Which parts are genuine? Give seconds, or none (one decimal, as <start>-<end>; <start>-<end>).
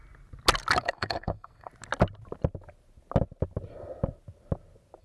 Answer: 0.0-0.8; 1.7-5.0